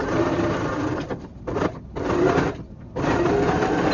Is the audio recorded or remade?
recorded